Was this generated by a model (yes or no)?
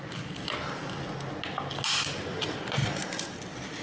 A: no